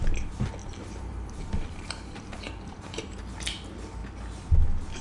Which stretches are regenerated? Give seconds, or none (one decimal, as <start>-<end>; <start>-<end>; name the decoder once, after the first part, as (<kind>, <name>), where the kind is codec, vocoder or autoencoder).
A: 0.6-3.2 (vocoder, BigVGAN v2)